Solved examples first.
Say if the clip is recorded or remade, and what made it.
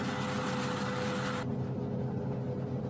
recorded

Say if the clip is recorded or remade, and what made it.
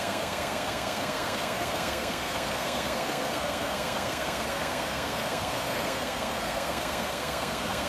remade, codec, SNAC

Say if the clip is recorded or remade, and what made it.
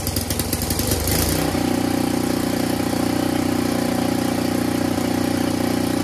recorded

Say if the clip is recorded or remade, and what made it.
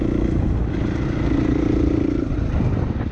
recorded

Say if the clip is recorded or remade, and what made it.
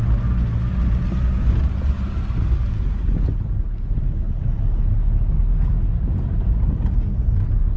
recorded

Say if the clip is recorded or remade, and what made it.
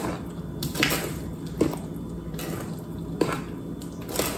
recorded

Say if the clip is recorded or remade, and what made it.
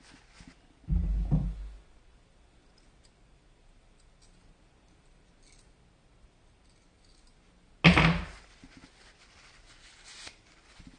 recorded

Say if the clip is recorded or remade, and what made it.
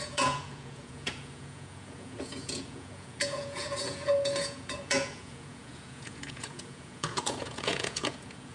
remade, vocoder, Vocos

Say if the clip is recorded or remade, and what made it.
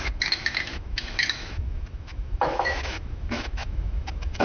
remade, autoencoder, DAC-VAE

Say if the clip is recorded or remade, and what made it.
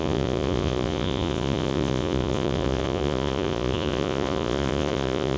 remade, vocoder, Vocos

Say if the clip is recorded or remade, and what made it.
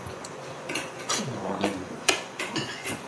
remade, vocoder, Vocos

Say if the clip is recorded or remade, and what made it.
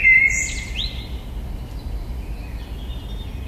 recorded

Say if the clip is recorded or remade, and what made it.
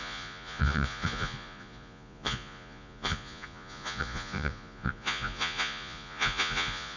remade, vocoder, Vocos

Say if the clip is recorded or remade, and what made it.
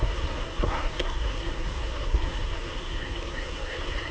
remade, codec, SNAC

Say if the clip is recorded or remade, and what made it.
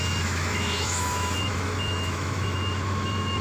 remade, autoencoder, DAC-VAE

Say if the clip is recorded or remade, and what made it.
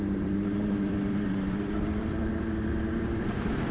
remade, vocoder, BigVGAN v2